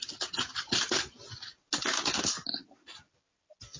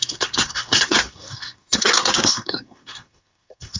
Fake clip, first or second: second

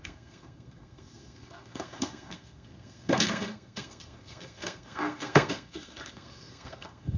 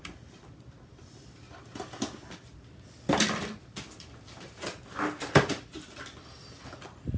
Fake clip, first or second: first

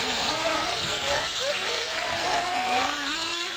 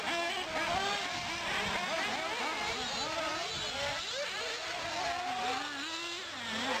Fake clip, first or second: first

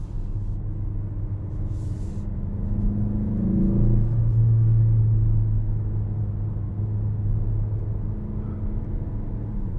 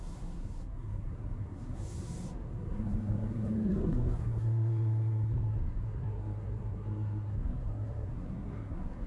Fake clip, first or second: second